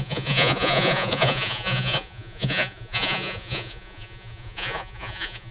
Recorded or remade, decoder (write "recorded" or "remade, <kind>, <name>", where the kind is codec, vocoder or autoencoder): remade, vocoder, Vocos